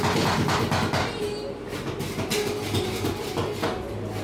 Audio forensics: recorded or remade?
recorded